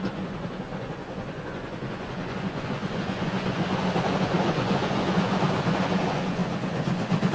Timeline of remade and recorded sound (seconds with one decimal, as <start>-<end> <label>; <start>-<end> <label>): 0.0-7.3 remade

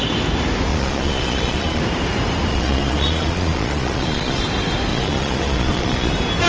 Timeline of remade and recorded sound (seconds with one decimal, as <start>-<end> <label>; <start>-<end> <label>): 0.0-0.7 recorded; 0.7-1.8 remade; 1.8-2.5 recorded; 2.5-4.4 remade; 4.4-4.9 recorded; 4.9-6.1 remade; 6.1-6.5 recorded

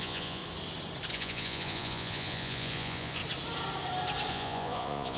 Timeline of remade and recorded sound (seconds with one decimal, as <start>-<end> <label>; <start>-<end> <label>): 0.0-0.4 remade; 0.4-1.1 recorded; 1.1-3.2 remade; 3.2-4.3 recorded; 4.3-5.2 remade

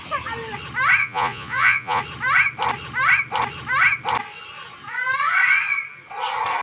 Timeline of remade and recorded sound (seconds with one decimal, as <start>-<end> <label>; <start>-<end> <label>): 0.0-1.0 recorded; 1.0-2.0 remade; 2.0-6.6 recorded

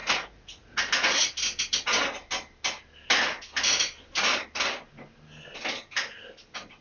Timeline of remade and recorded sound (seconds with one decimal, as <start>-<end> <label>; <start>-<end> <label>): 0.0-0.8 remade; 0.8-6.8 recorded